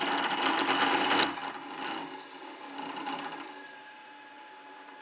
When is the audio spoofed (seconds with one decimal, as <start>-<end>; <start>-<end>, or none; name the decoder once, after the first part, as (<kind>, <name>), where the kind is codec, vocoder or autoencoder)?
none